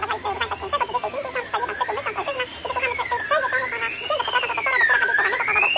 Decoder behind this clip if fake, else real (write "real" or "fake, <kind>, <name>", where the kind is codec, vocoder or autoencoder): real